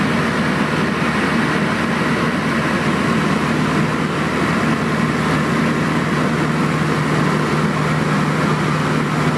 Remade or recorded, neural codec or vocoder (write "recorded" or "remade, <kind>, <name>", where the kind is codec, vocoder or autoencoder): recorded